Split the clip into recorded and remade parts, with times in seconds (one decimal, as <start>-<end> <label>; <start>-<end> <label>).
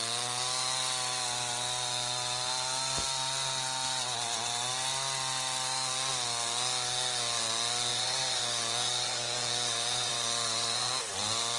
0.0-7.9 recorded; 7.9-11.0 remade; 11.0-11.6 recorded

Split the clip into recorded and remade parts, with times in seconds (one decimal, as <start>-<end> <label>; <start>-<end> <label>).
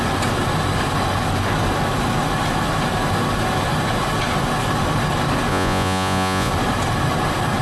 0.0-5.5 recorded; 5.5-6.5 remade; 6.5-7.6 recorded